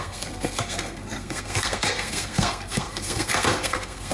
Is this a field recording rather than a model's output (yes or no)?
no